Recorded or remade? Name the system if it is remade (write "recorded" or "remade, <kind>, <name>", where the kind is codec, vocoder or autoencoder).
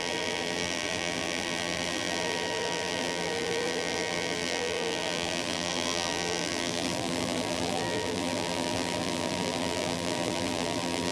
remade, vocoder, BigVGAN v2